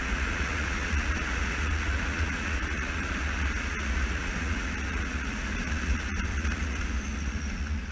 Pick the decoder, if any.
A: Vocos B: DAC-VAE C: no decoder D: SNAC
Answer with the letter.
A